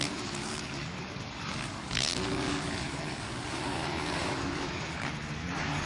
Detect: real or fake fake